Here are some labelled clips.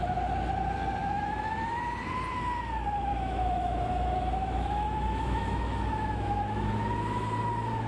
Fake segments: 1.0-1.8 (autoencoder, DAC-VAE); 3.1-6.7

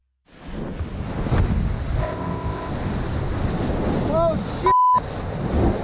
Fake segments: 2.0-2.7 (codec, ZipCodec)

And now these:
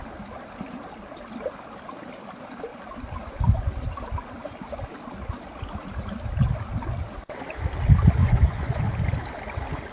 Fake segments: 8.2-8.8 (vocoder, Vocos)

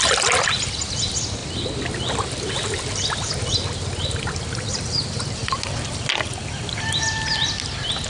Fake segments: none

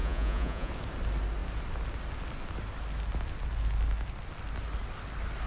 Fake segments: 0.0-0.7 (vocoder, Vocos)

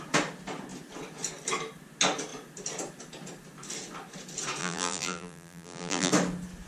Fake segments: 4.6-6.1 (vocoder, BigVGAN v2)

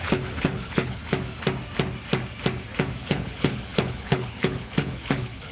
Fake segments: 0.0-1.0 (codec, HILCodec); 3.0-5.5

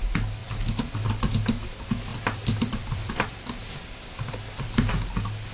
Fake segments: 0.4-1.1 (vocoder, BigVGAN v2); 2.1-4.9